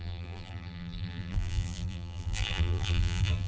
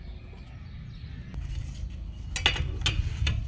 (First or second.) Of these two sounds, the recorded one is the second